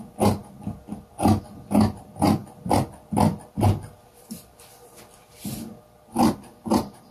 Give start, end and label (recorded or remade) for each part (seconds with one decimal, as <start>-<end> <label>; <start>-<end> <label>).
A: 0.0-2.4 recorded; 2.4-5.7 remade; 5.7-7.1 recorded